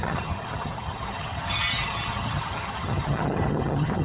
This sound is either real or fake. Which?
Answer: fake